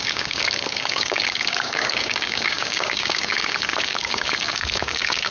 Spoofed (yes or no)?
yes